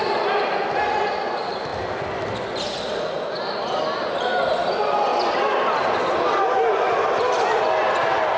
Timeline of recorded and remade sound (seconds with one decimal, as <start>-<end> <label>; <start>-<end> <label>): 0.0-8.4 recorded